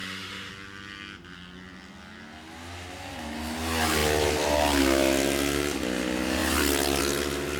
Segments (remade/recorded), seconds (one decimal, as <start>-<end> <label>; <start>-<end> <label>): 0.0-0.5 remade; 0.5-7.6 recorded